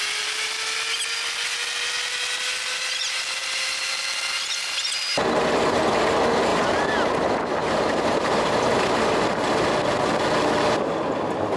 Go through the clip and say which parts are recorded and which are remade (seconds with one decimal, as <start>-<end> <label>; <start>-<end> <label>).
0.0-6.5 recorded; 6.5-7.1 remade; 7.1-7.6 recorded; 7.6-8.5 remade; 8.5-11.6 recorded